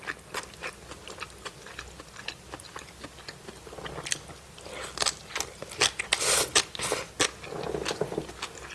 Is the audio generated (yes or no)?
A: no